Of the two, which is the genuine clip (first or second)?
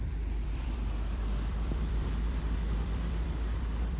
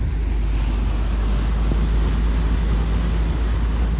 second